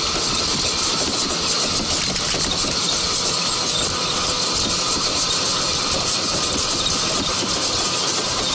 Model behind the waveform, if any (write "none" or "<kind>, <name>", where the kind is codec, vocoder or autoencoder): none